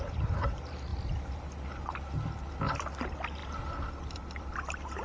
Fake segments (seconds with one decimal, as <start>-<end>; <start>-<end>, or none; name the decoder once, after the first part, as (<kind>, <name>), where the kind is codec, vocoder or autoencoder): 0.0-0.9 (vocoder, BigVGAN v2); 3.0-3.4; 3.9-5.0